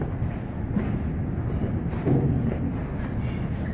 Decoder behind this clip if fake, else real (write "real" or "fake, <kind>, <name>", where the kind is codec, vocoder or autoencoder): real